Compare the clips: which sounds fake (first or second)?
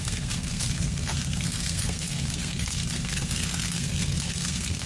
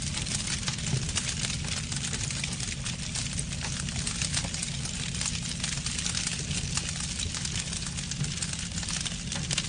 first